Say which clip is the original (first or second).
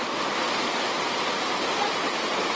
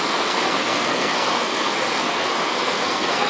first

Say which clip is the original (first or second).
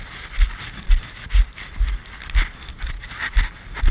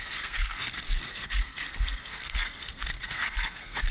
first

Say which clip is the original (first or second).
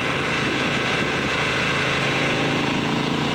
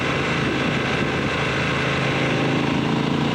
second